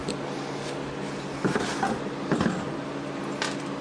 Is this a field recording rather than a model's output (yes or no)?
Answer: yes